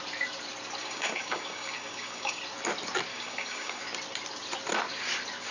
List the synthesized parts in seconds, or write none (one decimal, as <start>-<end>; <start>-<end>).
0.8-2.4; 3.1-3.8